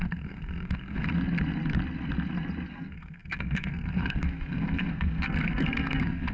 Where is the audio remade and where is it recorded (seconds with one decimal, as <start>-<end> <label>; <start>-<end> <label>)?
0.0-1.1 remade; 1.1-2.7 recorded; 2.7-6.3 remade